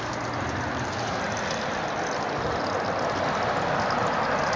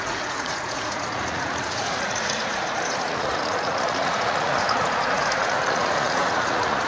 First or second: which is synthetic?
second